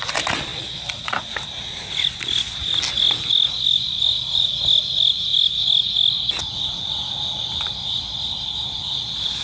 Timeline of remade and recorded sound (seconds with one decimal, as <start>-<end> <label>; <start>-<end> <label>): 0.0-9.4 recorded